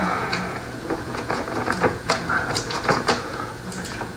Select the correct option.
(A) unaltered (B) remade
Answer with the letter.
B